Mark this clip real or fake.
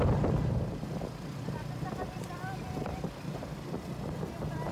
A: real